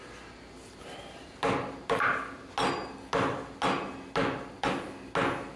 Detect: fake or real real